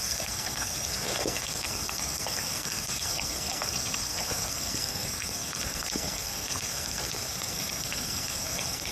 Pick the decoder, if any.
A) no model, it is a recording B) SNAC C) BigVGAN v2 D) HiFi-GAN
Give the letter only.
B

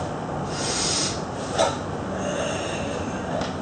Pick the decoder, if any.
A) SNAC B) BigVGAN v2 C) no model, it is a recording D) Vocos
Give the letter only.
C